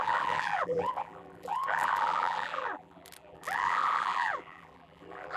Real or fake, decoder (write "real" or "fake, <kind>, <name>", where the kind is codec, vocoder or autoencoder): fake, vocoder, BigVGAN v2